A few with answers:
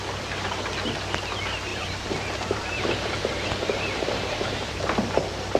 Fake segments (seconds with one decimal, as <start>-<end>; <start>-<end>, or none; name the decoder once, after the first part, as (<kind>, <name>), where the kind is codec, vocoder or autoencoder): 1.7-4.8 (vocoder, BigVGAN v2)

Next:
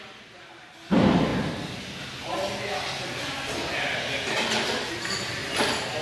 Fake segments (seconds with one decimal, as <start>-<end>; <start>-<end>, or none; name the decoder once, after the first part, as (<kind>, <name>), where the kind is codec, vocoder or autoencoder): none

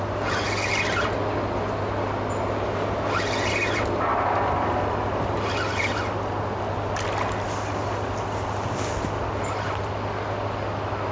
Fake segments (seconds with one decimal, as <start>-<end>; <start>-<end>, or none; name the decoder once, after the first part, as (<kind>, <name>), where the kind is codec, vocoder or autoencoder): none